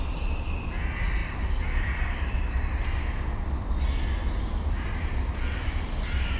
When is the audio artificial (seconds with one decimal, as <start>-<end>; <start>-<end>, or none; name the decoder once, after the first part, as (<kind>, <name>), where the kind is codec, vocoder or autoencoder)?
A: none